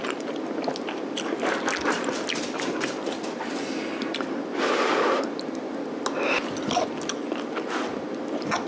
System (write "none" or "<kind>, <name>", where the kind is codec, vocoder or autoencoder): none